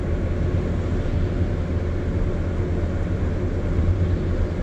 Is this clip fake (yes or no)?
no